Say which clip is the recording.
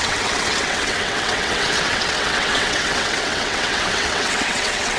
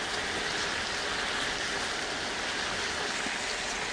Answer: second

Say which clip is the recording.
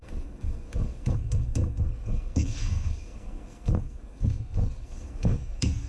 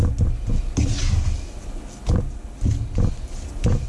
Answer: second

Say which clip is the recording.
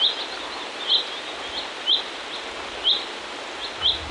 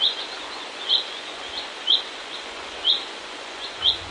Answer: first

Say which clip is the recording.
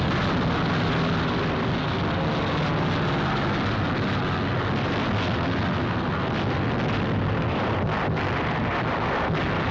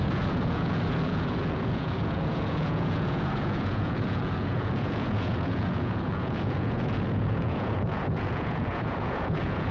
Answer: first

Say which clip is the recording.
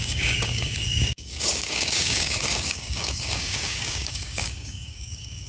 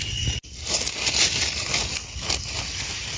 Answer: second